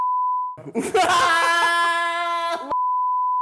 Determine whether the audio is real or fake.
real